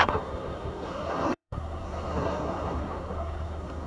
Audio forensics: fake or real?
fake